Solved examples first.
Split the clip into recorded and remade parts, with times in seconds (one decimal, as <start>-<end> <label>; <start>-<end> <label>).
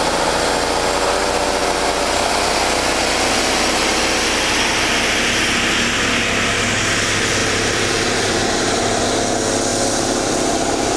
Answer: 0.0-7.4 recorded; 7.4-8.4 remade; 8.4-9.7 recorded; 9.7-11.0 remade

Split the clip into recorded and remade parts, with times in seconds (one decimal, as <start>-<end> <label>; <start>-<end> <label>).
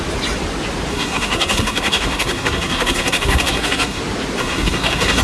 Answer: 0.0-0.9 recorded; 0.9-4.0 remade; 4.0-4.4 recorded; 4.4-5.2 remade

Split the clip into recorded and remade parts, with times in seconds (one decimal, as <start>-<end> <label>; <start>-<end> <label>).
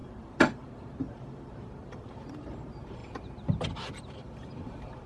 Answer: 0.0-3.0 remade; 3.0-4.0 recorded; 4.0-5.1 remade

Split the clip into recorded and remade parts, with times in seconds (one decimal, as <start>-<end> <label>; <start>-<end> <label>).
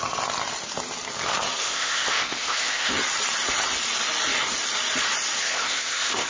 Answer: 0.0-1.6 recorded; 1.6-2.9 remade; 2.9-5.4 recorded; 5.4-6.3 remade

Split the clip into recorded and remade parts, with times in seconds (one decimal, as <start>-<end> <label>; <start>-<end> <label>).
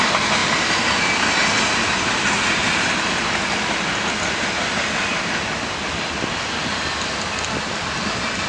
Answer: 0.0-8.5 recorded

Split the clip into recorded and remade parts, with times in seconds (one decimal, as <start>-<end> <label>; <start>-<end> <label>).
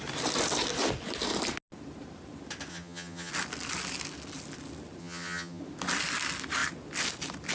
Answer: 0.0-2.7 recorded; 2.7-3.3 remade; 3.3-5.0 recorded; 5.0-5.6 remade; 5.6-7.5 recorded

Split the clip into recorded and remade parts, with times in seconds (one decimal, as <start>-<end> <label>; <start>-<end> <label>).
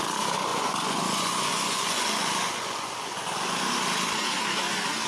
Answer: 0.0-0.5 recorded; 0.5-3.6 remade; 3.6-5.1 recorded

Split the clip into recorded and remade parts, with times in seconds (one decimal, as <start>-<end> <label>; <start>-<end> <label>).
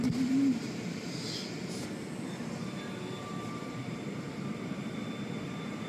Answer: 0.0-1.0 remade; 1.0-2.4 recorded; 2.4-5.9 remade